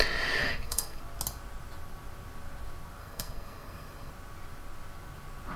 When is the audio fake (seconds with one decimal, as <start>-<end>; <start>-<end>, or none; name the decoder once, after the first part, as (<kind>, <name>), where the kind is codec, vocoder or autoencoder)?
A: 0.4-1.0 (codec, SNAC); 3.0-4.1